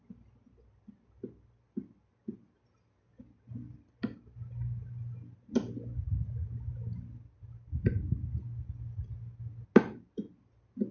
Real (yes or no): yes